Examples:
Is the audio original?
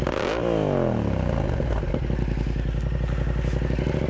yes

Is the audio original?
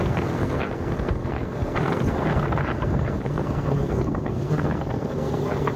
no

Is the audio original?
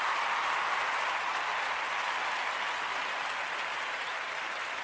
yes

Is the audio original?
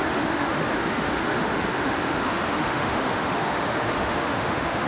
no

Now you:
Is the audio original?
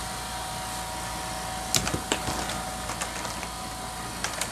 yes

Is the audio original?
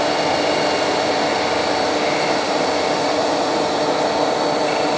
yes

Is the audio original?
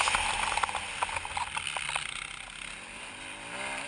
yes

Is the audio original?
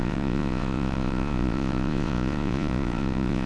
no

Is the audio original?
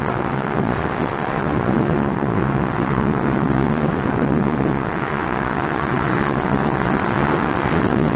no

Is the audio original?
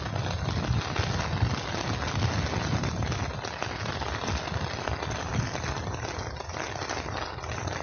yes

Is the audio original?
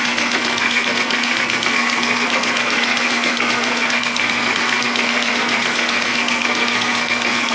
no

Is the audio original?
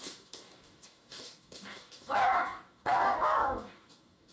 no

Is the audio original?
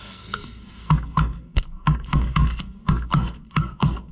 no